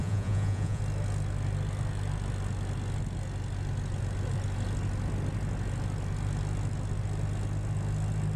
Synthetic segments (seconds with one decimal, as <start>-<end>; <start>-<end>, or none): 0.0-0.8